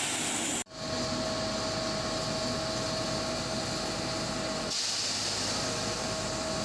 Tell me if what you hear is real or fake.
real